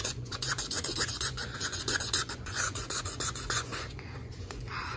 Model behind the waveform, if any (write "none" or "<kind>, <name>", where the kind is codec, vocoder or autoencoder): vocoder, Vocos